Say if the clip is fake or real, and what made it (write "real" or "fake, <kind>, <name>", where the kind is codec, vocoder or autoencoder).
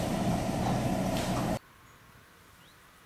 real